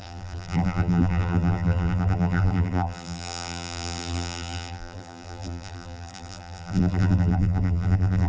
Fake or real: fake